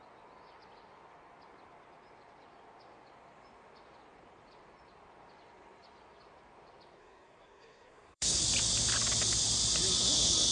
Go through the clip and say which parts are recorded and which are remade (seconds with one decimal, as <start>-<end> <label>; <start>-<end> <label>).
0.0-7.0 recorded; 7.0-8.4 remade; 8.4-10.5 recorded